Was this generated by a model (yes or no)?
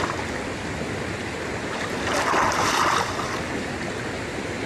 no